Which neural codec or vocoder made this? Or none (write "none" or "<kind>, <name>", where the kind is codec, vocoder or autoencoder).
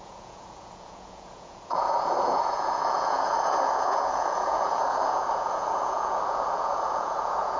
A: vocoder, Vocos